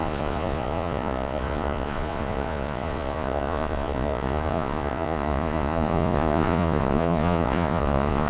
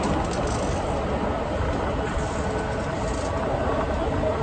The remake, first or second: first